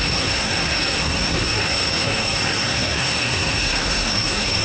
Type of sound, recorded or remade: remade